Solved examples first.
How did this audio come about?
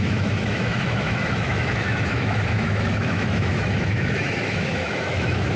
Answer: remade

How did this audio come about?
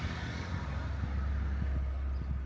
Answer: recorded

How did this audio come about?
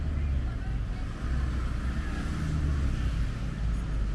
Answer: recorded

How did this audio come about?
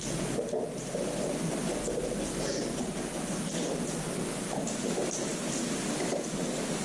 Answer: recorded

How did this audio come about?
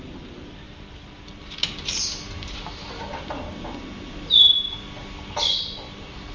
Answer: recorded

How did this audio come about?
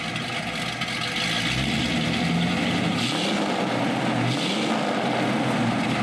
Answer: recorded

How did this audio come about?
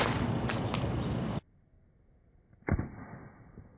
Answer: recorded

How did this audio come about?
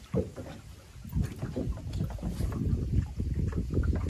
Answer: recorded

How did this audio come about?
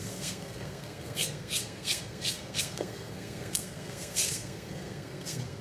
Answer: remade